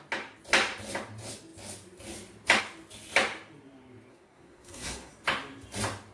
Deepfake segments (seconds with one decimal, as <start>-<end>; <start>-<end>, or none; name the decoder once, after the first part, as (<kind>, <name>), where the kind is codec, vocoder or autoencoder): 4.1-5.1 (codec, SNAC)